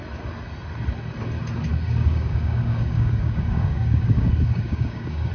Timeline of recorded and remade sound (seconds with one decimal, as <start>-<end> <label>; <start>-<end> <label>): 0.0-1.7 recorded; 1.7-5.3 remade